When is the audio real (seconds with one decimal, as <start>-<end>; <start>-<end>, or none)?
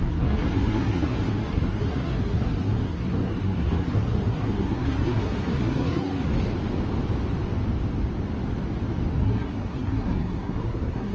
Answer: 6.3-9.1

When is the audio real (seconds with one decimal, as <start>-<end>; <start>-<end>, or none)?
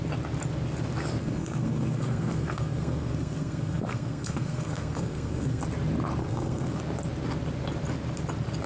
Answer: 0.0-1.2; 5.6-6.2; 6.8-8.7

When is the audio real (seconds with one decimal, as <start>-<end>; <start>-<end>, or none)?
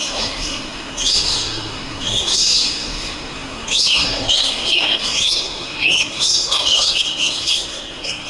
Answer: none